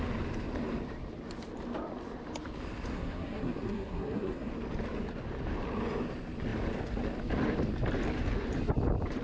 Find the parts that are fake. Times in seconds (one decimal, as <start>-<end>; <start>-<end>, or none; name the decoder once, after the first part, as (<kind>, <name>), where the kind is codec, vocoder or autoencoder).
2.9-4.5 (codec, SNAC)